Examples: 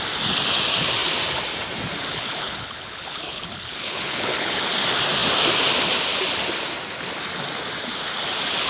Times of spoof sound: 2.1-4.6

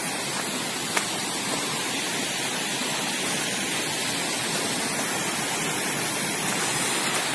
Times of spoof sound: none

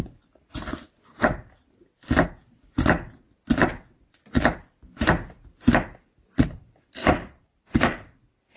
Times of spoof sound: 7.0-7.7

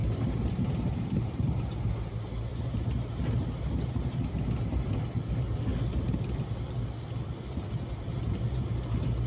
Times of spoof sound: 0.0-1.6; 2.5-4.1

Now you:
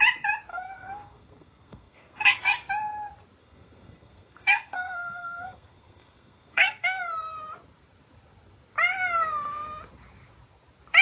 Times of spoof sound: 0.5-2.7; 3.4-7.0

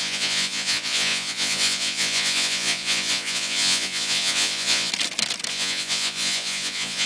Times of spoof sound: 0.0-4.9; 5.5-7.1